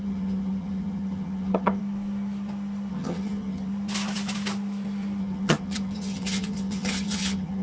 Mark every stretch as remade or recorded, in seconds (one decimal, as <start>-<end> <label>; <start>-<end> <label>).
0.0-1.8 remade; 1.8-2.9 recorded; 2.9-3.7 remade; 3.7-5.2 recorded; 5.2-7.6 remade